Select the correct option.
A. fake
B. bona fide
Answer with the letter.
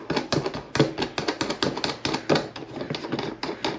B